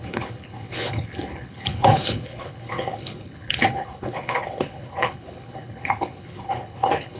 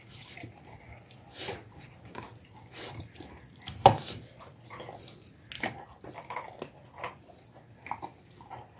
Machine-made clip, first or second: first